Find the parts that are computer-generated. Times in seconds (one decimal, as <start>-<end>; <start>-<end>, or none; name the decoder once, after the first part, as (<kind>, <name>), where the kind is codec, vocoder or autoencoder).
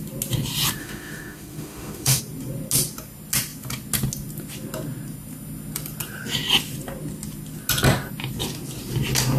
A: 0.8-2.2 (autoencoder, DAC-VAE)